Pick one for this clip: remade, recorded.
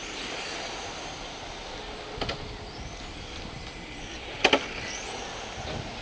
recorded